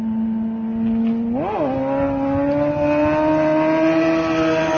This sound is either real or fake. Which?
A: real